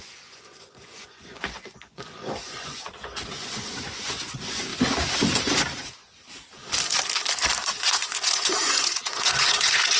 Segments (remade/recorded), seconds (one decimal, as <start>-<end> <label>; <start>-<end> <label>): 0.0-4.7 remade; 4.7-7.7 recorded; 7.7-10.0 remade